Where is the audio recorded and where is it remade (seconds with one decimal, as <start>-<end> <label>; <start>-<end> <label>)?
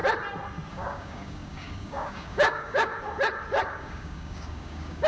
0.0-0.7 recorded; 0.7-2.9 remade; 2.9-3.8 recorded; 3.8-5.1 remade